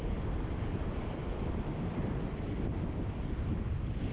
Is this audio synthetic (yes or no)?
no